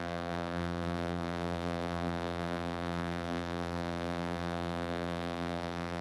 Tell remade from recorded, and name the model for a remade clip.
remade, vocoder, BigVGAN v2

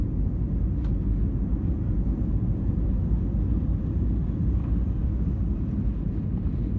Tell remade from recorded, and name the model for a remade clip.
recorded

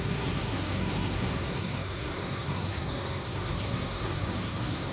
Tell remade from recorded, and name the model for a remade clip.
remade, codec, SNAC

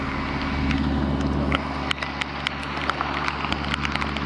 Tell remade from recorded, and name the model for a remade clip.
recorded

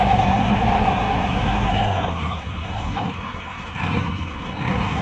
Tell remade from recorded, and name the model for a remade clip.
remade, codec, SNAC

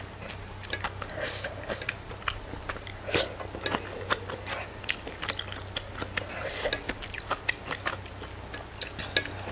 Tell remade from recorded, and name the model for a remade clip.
recorded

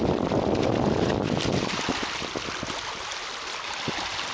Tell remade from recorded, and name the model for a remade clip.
recorded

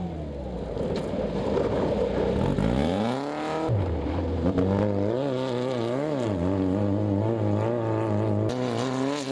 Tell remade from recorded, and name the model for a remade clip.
recorded